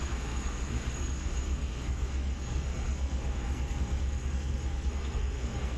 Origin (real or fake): fake